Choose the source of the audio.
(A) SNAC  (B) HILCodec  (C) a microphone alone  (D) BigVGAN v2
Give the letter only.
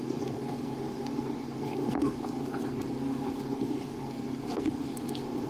A